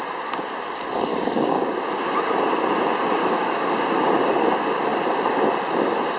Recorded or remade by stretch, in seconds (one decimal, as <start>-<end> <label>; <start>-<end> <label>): 0.0-1.1 recorded; 1.1-1.8 remade; 1.8-3.2 recorded; 3.2-4.1 remade; 4.1-6.2 recorded